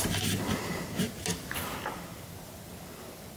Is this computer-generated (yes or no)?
no